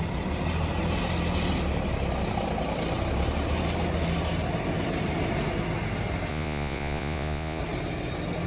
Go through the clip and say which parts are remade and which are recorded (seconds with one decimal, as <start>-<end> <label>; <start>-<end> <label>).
0.0-6.3 recorded; 6.3-7.6 remade; 7.6-8.5 recorded